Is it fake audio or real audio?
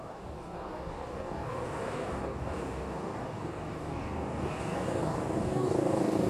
fake